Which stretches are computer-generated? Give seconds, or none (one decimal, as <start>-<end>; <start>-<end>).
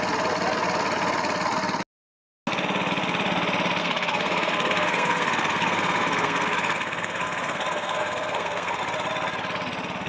3.8-8.8